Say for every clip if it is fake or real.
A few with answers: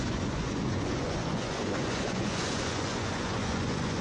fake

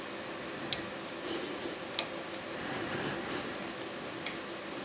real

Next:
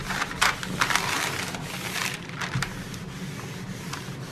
real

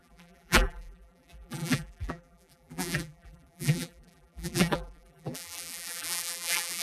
fake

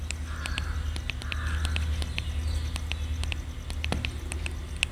real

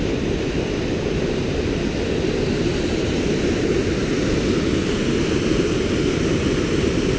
real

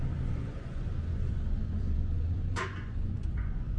fake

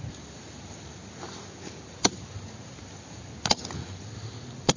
real